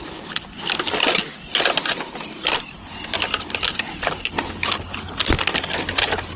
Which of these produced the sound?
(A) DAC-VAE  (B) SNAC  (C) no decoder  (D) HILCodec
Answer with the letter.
C